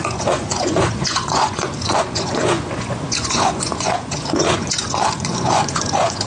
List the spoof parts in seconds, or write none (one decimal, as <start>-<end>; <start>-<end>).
0.0-6.3